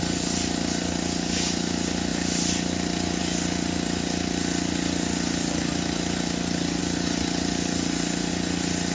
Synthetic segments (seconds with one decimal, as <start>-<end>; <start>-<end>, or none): none

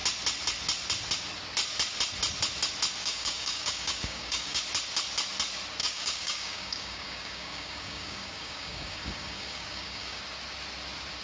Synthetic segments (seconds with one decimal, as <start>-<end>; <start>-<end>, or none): 3.0-4.6; 5.8-10.2

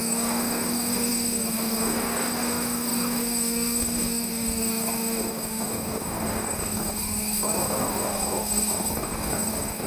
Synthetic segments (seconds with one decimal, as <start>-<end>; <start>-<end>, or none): 0.0-9.9